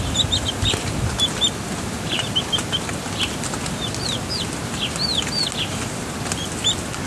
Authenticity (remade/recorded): recorded